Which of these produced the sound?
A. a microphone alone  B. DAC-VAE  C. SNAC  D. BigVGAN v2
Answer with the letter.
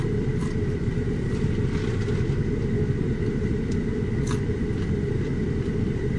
D